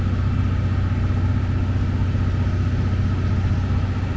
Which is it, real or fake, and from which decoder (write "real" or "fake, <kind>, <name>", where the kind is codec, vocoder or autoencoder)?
real